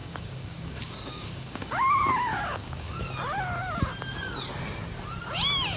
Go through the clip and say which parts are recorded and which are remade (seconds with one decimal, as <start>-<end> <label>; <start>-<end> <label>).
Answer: 0.0-3.0 remade; 3.0-5.8 recorded